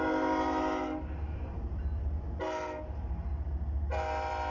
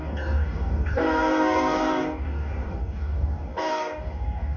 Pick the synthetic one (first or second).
second